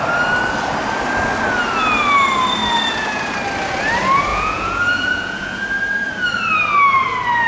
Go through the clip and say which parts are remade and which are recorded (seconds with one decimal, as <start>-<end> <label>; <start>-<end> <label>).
0.0-4.3 recorded; 4.3-5.6 remade; 5.6-7.5 recorded

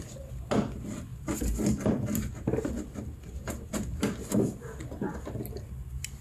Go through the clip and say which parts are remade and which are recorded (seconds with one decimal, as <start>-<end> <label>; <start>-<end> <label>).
0.0-6.2 recorded

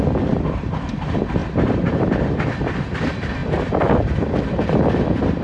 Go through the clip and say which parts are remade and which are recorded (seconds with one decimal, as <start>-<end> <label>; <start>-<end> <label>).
0.0-5.4 remade

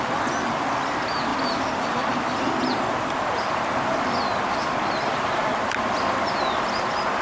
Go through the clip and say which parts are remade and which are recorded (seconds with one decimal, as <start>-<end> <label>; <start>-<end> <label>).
0.0-1.3 recorded; 1.3-5.6 remade; 5.6-7.2 recorded

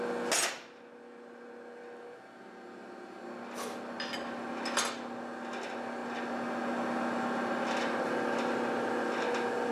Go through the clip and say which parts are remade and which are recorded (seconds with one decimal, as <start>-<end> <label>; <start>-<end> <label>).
0.0-9.7 recorded

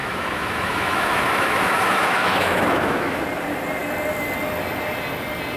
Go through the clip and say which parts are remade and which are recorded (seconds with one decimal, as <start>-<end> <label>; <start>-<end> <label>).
0.0-3.2 remade; 3.2-5.6 recorded